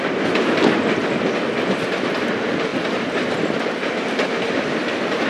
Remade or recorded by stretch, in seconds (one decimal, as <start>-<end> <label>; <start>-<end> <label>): 0.0-1.0 remade; 1.0-2.3 recorded; 2.3-5.3 remade